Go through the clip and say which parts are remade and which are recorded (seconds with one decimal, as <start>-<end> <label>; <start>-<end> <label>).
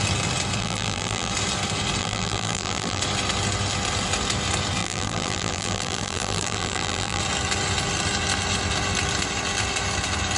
0.0-0.6 recorded; 0.6-1.3 remade; 1.3-2.0 recorded; 2.0-3.0 remade; 3.0-4.8 recorded; 4.8-7.2 remade; 7.2-10.4 recorded